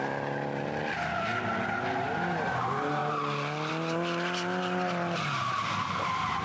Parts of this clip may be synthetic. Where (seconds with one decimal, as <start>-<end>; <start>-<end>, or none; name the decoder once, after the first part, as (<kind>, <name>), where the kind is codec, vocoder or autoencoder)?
none

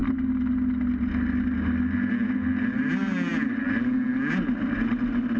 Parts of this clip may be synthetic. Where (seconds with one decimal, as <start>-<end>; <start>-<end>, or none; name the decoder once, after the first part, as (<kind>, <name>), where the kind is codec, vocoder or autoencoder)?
none

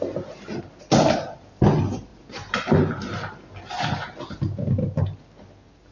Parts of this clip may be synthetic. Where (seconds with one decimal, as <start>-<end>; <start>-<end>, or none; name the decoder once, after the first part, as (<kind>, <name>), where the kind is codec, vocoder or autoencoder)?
none

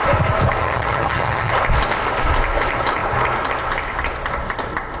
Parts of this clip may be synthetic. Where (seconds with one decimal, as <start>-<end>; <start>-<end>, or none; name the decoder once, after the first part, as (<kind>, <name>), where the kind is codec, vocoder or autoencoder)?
0.6-1.5 (vocoder, HiFi-GAN)